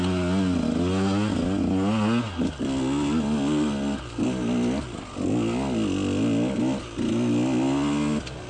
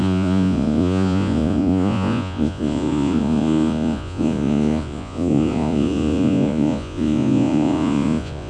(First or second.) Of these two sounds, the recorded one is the first